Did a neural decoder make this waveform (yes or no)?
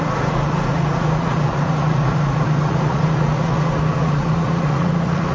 yes